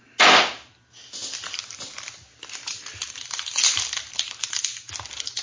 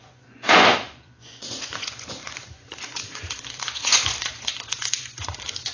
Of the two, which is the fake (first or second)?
second